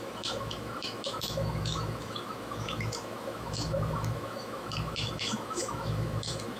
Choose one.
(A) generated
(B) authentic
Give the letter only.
A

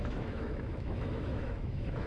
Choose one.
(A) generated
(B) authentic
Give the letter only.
A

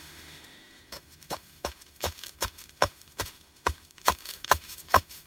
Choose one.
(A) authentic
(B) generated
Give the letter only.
B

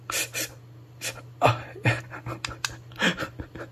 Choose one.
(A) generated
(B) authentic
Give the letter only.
B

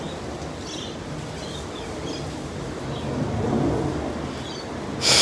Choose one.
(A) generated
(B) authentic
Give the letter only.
B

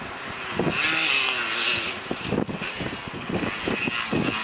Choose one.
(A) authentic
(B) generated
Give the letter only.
A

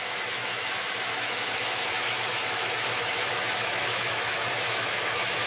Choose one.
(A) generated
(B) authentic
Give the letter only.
A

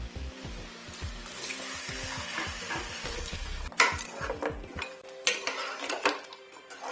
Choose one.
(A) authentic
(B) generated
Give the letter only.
A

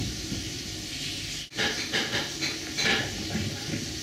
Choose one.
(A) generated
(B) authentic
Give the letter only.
B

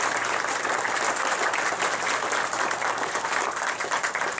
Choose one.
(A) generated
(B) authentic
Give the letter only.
B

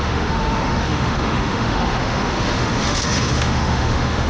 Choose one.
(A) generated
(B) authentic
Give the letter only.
A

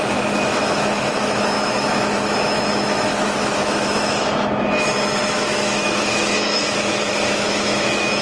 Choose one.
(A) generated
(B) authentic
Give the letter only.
A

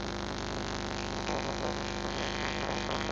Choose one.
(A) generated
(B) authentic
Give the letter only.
B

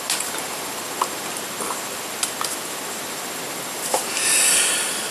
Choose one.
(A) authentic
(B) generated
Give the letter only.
A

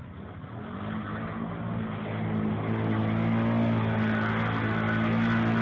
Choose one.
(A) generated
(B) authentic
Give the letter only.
B